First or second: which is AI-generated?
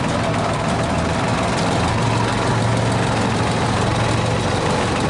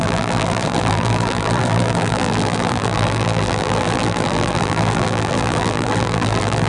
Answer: second